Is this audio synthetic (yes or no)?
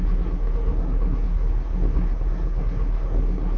yes